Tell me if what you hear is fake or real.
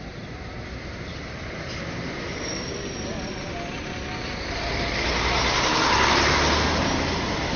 real